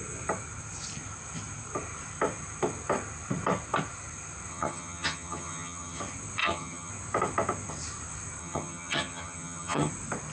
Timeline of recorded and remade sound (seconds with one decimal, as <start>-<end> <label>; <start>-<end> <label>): 0.0-4.5 recorded; 4.5-6.0 remade; 6.0-6.4 recorded; 6.4-6.9 remade; 6.9-8.4 recorded; 8.4-9.9 remade; 9.9-10.3 recorded